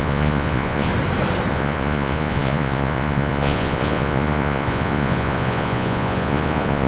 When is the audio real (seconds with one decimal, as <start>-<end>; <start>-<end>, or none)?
0.9-1.5